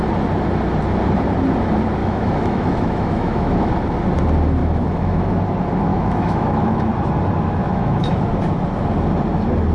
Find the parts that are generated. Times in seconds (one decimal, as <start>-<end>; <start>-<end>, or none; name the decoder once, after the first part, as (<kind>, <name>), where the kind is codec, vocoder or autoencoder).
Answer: 2.0-3.7 (autoencoder, DAC-VAE); 4.6-5.3; 5.9-6.9; 7.6-8.2